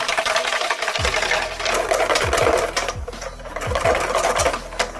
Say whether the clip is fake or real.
real